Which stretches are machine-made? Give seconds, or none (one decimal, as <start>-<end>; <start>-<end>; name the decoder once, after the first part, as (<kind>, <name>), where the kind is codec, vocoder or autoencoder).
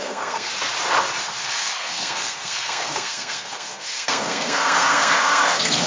0.0-0.5 (codec, SNAC); 1.4-5.9